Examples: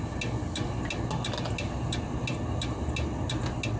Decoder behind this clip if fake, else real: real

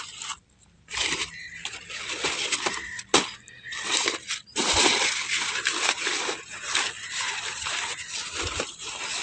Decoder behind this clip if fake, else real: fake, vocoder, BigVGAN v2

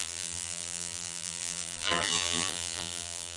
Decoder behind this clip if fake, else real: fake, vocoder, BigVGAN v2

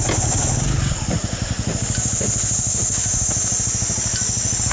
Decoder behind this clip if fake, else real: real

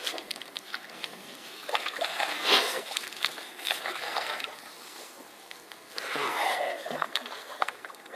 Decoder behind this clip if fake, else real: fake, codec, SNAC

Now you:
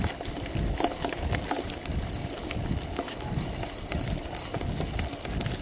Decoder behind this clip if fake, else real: real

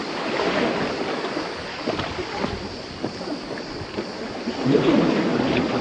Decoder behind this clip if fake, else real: real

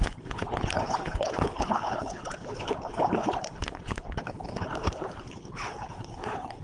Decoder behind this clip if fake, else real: fake, codec, HILCodec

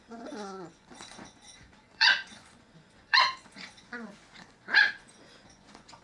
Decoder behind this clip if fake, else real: fake, vocoder, Vocos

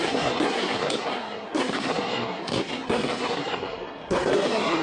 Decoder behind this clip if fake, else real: fake, codec, SNAC